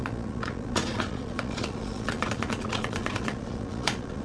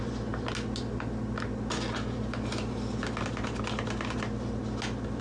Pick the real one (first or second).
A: second